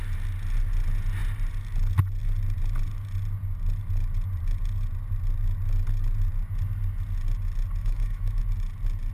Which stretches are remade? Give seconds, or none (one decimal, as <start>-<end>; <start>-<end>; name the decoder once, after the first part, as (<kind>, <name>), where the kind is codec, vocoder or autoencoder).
7.8-8.4 (autoencoder, DAC-VAE)